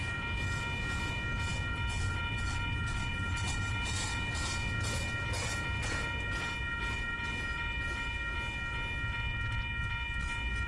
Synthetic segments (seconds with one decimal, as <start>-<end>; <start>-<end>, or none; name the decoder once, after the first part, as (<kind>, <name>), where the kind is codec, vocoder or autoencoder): none